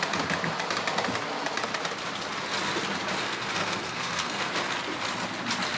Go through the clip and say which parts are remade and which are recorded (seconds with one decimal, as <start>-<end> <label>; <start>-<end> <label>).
0.0-3.2 recorded; 3.2-4.5 remade; 4.5-5.8 recorded